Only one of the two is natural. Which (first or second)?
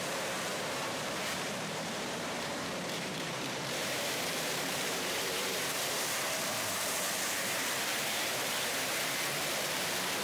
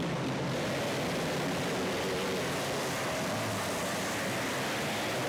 second